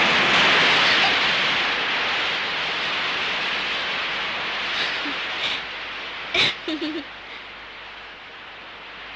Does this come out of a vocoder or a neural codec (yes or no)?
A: no